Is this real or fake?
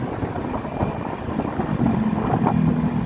real